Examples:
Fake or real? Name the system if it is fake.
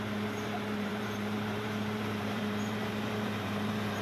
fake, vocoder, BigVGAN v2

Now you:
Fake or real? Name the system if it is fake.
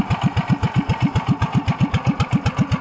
real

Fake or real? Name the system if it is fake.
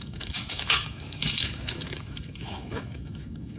fake, autoencoder, DAC-VAE